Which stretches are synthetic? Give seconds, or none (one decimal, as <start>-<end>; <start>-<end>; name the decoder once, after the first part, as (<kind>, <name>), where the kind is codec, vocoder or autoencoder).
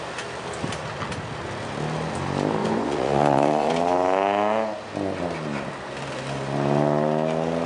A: 2.6-3.7 (vocoder, Vocos)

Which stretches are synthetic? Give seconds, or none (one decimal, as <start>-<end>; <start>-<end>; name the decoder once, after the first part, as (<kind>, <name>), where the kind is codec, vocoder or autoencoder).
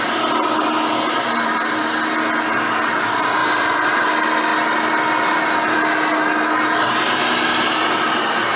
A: none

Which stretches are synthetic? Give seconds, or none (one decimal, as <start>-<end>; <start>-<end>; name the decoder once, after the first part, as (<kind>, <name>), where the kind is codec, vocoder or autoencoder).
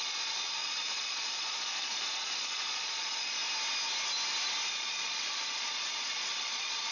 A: 0.0-3.4 (vocoder, Vocos); 4.7-6.9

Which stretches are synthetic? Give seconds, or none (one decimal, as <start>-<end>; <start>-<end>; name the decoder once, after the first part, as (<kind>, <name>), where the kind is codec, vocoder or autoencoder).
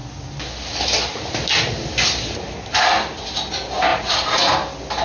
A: 3.9-4.5 (vocoder, Vocos)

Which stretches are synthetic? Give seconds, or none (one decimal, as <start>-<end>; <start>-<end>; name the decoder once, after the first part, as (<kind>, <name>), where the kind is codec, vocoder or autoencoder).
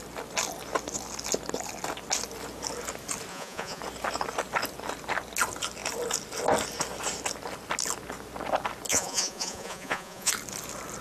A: 3.3-3.8 (vocoder, Vocos); 8.9-10.3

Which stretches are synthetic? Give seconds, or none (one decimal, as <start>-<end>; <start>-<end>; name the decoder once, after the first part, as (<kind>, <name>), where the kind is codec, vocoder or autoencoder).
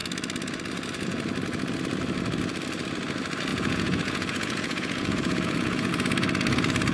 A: 3.5-5.9 (vocoder, Vocos)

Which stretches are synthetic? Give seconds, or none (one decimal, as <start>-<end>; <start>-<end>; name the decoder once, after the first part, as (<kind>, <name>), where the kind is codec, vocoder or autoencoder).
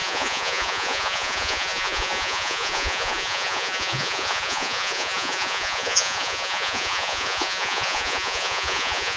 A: 0.0-9.2 (vocoder, Vocos)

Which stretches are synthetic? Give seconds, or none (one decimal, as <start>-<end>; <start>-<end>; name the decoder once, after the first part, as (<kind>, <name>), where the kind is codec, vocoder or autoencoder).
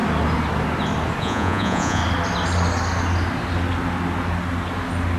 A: 1.2-2.0 (vocoder, Vocos)